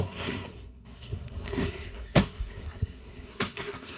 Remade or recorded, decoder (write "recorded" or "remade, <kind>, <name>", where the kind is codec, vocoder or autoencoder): remade, codec, SNAC